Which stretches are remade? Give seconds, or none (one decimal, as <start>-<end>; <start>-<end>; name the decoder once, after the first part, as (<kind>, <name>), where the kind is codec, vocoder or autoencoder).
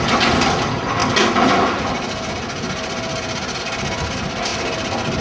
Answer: none